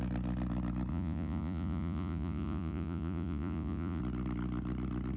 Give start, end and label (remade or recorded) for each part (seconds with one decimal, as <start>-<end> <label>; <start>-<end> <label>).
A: 0.0-0.9 recorded; 0.9-4.0 remade; 4.0-5.2 recorded